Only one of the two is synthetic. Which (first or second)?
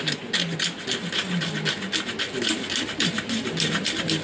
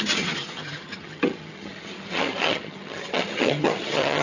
second